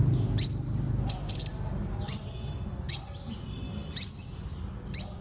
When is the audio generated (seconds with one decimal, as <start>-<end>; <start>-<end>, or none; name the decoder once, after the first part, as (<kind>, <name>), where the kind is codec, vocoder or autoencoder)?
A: none